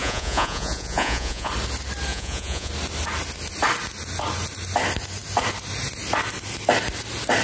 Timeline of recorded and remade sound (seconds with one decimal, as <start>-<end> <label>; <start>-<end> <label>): 0.0-1.5 remade; 1.5-2.1 recorded; 2.1-2.7 remade; 2.7-7.4 recorded